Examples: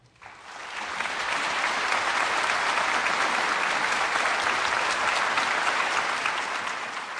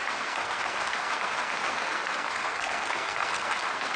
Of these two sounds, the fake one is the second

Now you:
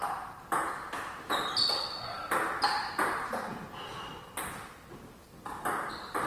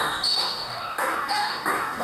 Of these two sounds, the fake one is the second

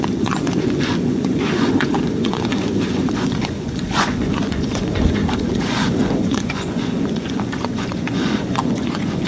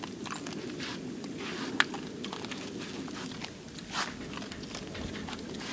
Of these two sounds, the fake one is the first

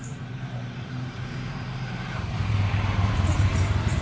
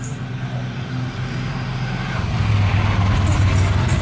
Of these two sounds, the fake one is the first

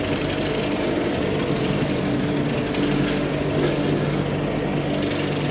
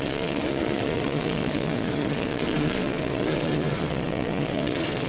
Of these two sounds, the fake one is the second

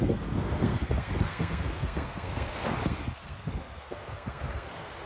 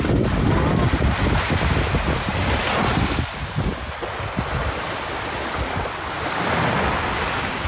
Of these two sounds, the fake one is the first